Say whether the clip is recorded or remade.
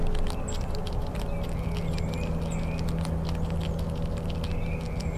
recorded